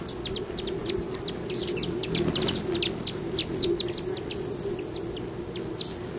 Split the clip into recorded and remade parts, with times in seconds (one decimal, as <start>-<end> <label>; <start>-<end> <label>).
0.0-6.2 recorded